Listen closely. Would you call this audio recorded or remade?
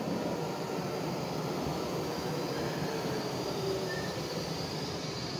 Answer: recorded